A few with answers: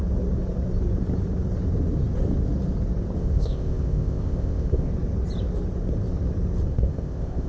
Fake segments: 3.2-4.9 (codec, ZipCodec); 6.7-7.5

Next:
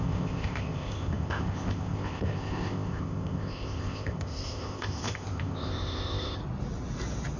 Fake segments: 0.0-6.4 (codec, ZipCodec)

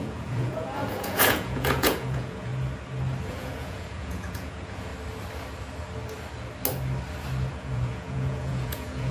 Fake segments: 0.0-2.5 (vocoder, Vocos); 3.3-4.9; 7.5-9.1

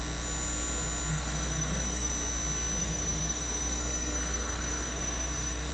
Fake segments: 1.1-2.1 (codec, SNAC); 2.8-5.7